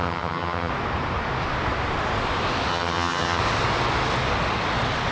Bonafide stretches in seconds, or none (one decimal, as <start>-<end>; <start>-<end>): 0.7-2.7; 3.4-5.1